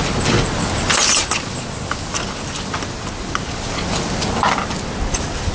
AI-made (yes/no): no